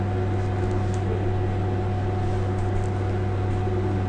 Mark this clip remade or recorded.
recorded